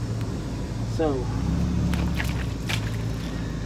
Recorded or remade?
recorded